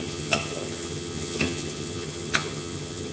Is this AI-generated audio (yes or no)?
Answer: yes